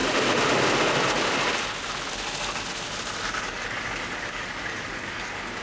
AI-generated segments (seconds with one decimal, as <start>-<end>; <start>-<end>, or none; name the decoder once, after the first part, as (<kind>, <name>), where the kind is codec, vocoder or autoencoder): 3.4-5.6 (codec, DAC)